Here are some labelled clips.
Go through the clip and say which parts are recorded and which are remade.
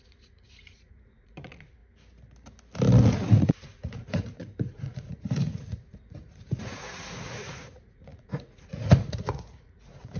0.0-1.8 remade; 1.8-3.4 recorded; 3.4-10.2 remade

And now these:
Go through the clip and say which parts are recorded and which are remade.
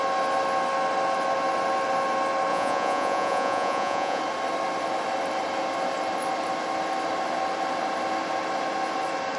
0.0-2.5 recorded; 2.5-4.2 remade; 4.2-9.4 recorded